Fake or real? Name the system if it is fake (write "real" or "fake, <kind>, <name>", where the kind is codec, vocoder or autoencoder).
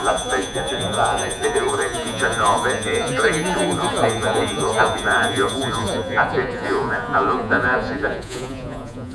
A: fake, vocoder, Vocos